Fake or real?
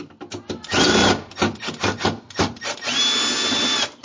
real